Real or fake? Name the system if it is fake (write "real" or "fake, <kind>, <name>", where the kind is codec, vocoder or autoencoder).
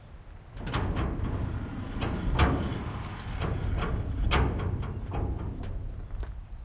real